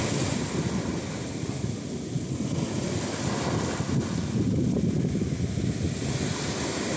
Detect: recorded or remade recorded